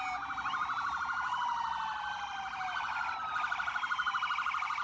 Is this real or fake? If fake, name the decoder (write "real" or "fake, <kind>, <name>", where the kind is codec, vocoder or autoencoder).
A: fake, vocoder, BigVGAN v2